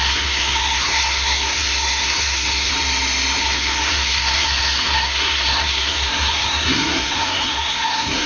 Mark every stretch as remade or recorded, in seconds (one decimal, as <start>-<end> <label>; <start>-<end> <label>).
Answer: 0.0-2.7 remade; 2.7-3.4 recorded; 3.4-8.3 remade